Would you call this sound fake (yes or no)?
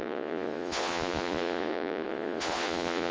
yes